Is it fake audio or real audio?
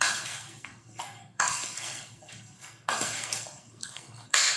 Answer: fake